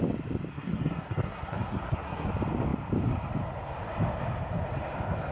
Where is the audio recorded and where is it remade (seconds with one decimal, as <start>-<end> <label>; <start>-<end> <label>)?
0.0-0.5 recorded; 0.5-2.3 remade; 2.3-5.3 recorded